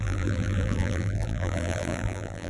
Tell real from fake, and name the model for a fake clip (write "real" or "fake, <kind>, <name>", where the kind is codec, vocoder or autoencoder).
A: fake, vocoder, BigVGAN v2